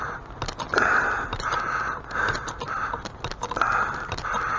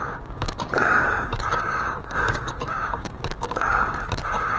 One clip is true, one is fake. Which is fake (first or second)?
second